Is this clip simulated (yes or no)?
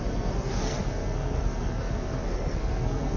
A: yes